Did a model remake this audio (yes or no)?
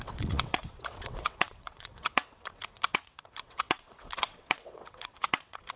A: yes